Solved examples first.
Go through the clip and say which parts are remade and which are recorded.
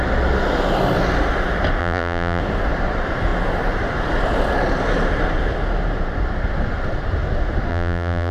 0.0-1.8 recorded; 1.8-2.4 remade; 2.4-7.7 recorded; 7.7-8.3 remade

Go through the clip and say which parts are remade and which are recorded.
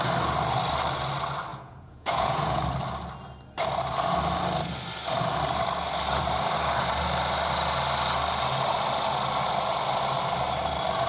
0.0-1.5 recorded; 1.5-2.6 remade; 2.6-11.1 recorded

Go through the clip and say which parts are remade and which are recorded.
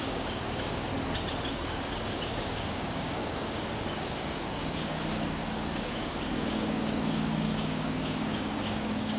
0.0-0.9 remade; 0.9-1.5 recorded; 1.5-9.2 remade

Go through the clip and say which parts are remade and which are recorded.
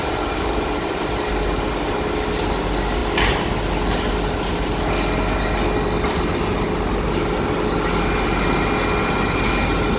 0.0-1.3 remade; 1.3-10.0 recorded